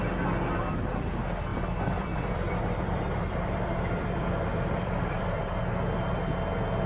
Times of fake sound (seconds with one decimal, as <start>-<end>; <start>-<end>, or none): 1.5-5.6

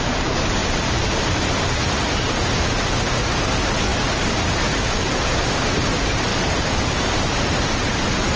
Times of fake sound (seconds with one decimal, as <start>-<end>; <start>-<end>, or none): 0.6-2.5; 6.3-8.0

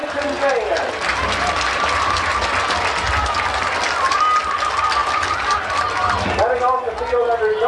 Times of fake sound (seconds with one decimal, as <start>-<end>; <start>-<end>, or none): 5.0-5.7

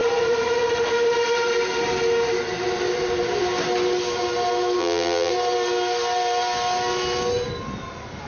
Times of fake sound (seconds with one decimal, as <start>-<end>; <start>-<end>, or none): 4.8-5.3

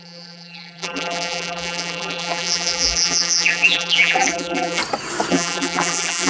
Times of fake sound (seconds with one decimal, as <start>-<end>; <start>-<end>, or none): 0.0-4.8; 5.3-6.3

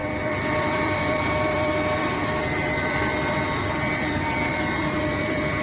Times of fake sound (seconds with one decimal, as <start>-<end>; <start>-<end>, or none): 0.0-5.6

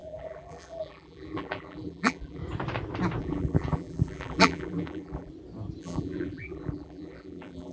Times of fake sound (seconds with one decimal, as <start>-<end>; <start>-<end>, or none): 0.0-2.4; 3.2-5.3; 5.8-7.7

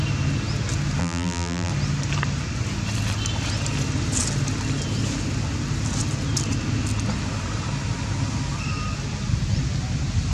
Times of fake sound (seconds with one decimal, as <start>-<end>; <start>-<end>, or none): 1.0-1.7